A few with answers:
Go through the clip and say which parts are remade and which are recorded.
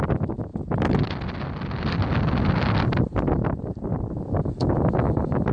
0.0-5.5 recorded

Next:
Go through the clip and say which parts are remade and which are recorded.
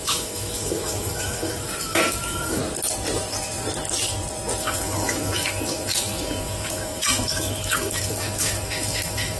0.0-2.6 remade; 2.6-4.6 recorded; 4.6-9.4 remade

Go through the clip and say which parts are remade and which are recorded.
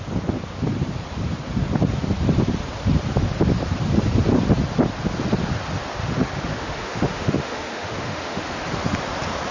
0.0-6.5 recorded; 6.5-8.4 remade; 8.4-9.5 recorded